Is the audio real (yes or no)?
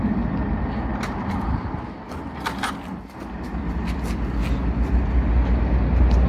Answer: yes